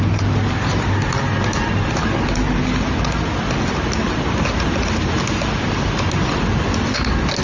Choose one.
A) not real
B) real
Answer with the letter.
B